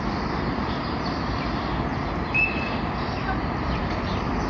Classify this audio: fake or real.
real